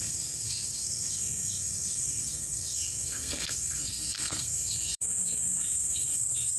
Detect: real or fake fake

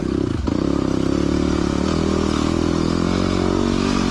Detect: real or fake real